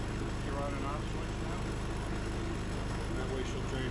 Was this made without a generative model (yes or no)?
yes